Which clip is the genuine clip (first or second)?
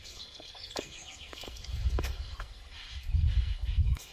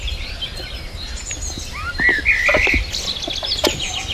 second